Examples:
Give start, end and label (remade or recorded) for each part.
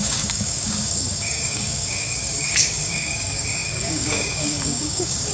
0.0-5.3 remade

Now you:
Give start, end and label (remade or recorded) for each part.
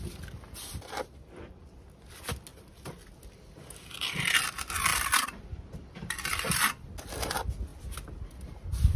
0.0-9.0 recorded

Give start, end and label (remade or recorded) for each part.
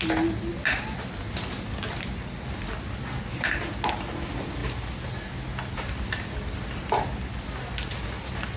0.0-8.6 recorded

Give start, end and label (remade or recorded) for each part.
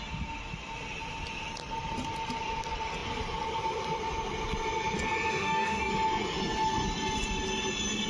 0.0-5.3 recorded; 5.3-5.9 remade; 5.9-8.1 recorded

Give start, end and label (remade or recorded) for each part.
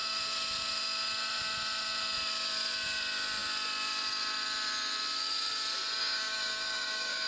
0.0-6.0 recorded; 6.0-7.3 remade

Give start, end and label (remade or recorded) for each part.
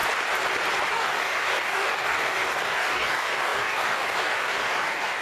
0.0-0.9 recorded; 0.9-5.2 remade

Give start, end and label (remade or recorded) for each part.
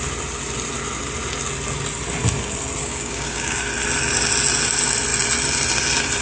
0.0-2.8 recorded; 2.8-3.6 remade; 3.6-6.2 recorded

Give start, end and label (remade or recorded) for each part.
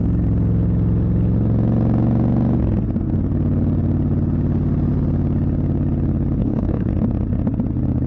0.0-6.4 recorded; 6.4-6.9 remade; 6.9-8.1 recorded